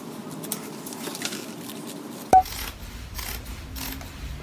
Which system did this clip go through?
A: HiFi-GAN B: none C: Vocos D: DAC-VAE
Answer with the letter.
B